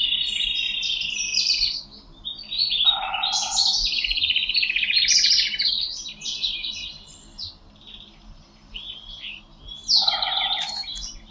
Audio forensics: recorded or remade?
recorded